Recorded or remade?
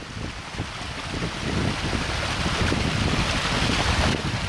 recorded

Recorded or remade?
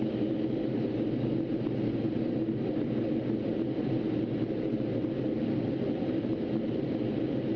recorded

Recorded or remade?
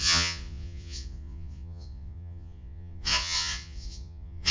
remade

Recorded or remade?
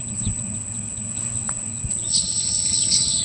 remade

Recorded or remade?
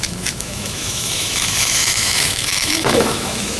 remade